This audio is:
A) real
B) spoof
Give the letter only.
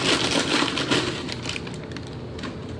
A